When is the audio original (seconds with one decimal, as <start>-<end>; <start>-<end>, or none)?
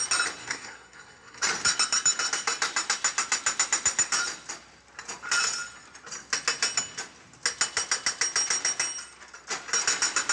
0.0-0.4; 1.4-10.3